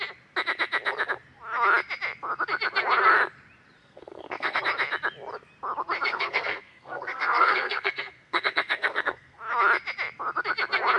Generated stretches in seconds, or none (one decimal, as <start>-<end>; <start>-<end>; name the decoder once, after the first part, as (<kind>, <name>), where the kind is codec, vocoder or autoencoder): 3.8-4.6 (codec, SNAC); 6.1-9.4